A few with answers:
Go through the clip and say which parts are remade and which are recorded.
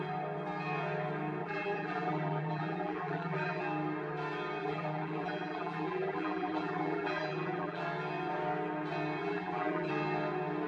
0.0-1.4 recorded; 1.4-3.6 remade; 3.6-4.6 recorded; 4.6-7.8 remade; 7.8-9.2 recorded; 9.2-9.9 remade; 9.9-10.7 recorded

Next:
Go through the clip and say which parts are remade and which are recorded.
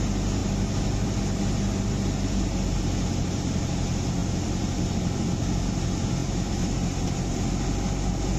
0.0-8.4 recorded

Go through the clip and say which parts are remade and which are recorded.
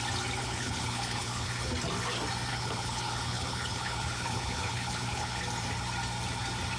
0.0-0.4 recorded; 0.4-1.7 remade; 1.7-2.5 recorded; 2.5-5.4 remade; 5.4-6.8 recorded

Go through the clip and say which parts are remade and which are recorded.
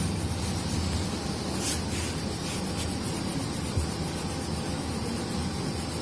0.0-6.0 recorded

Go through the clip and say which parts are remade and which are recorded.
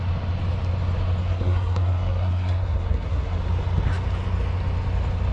0.0-1.2 recorded; 1.2-3.4 remade; 3.4-5.3 recorded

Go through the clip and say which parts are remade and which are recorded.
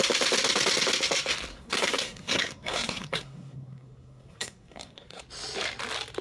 0.0-1.5 recorded; 1.5-5.2 remade; 5.2-6.2 recorded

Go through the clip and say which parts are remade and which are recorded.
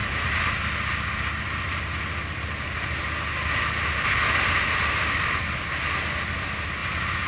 0.0-7.3 recorded